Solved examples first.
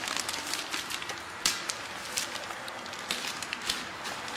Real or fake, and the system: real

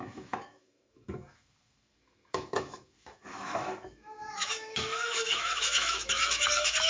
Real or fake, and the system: fake, autoencoder, DAC-VAE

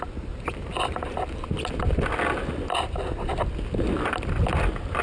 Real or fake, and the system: real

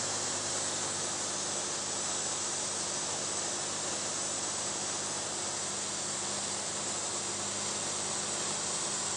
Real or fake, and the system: real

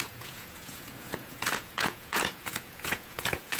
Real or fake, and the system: fake, vocoder, Vocos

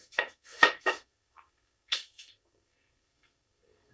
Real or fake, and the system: fake, codec, SNAC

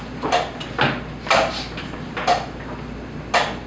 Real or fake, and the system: real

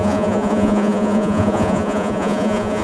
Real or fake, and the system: fake, vocoder, Vocos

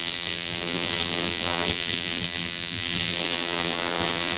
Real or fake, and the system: fake, vocoder, BigVGAN v2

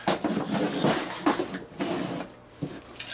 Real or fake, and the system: real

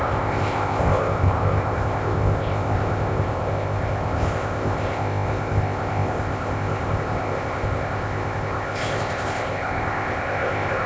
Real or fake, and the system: fake, codec, ZipCodec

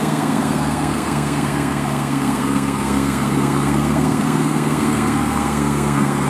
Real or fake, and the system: fake, codec, SNAC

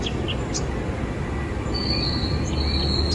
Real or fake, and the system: real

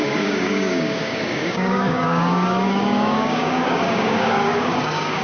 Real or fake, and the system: fake, codec, DAC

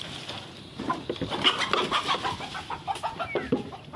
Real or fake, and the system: real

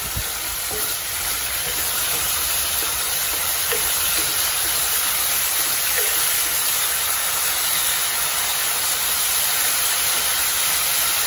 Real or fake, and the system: fake, vocoder, BigVGAN v2